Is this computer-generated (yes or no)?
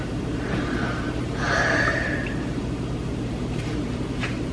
yes